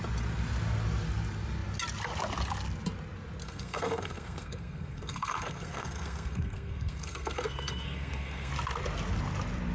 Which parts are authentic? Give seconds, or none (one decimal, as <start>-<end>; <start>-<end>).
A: 0.0-3.4; 8.5-9.7